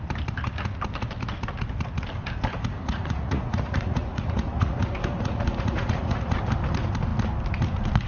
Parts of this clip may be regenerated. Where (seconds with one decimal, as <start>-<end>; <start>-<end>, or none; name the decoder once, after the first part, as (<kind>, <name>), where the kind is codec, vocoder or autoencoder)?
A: 2.8-6.4 (vocoder, Vocos)